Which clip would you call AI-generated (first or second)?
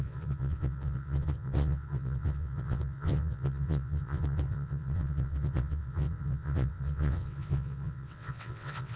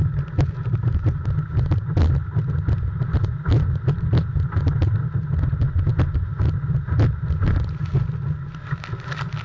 first